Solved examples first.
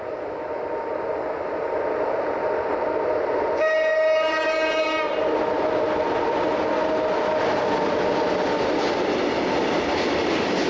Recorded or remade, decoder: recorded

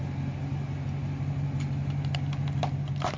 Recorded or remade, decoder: recorded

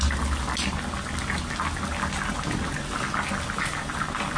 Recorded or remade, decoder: recorded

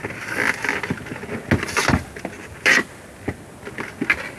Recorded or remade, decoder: recorded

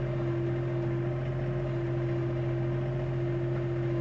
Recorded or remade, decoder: recorded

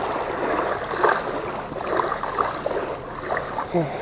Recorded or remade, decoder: recorded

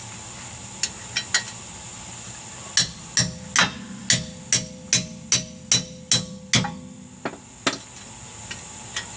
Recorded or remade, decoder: recorded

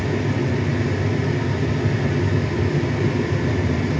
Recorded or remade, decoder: recorded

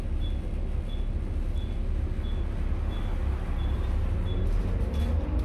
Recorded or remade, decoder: recorded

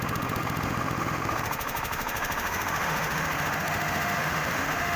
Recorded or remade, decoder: remade, autoencoder, DAC-VAE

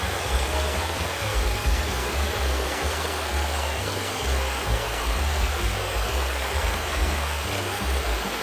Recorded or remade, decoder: remade, codec, SNAC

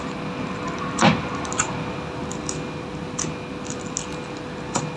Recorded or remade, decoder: recorded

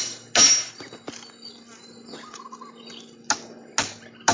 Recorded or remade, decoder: recorded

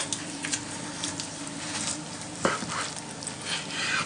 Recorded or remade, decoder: recorded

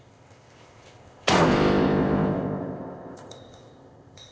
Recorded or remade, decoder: remade, codec, ZipCodec